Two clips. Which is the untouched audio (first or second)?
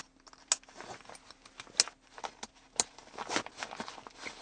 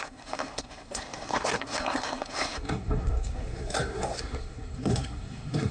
first